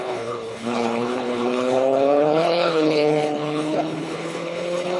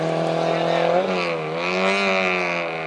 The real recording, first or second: second